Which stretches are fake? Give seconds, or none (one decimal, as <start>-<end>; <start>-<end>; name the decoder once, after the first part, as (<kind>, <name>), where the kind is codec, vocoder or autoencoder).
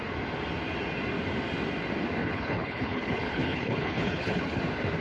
2.2-4.6 (codec, HILCodec)